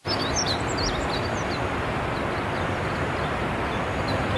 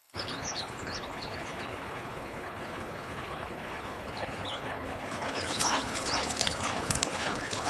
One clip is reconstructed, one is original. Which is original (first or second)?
first